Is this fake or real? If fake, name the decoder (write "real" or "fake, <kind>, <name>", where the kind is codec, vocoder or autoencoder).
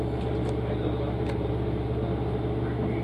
real